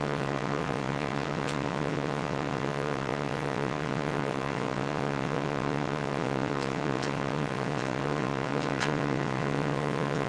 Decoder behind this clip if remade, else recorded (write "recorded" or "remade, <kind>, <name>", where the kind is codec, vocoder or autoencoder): remade, vocoder, WaveNeXt